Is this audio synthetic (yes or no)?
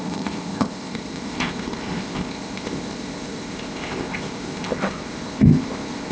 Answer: yes